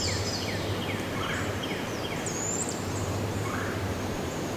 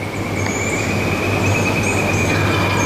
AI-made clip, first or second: first